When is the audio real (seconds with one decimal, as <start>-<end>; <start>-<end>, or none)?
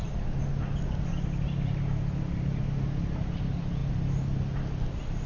0.0-5.3